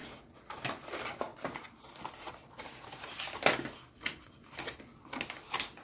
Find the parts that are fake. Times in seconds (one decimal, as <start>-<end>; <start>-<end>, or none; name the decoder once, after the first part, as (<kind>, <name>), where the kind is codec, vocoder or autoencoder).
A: none